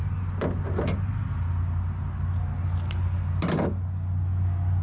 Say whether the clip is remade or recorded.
recorded